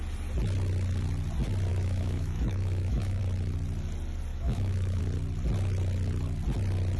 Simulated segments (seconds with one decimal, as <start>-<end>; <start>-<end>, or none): 1.7-3.2; 4.3-5.0